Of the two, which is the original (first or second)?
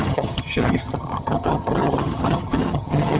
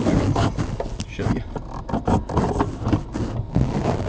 second